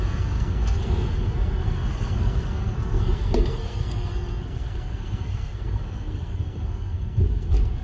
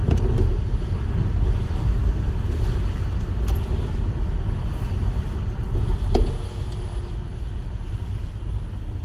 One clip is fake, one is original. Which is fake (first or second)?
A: first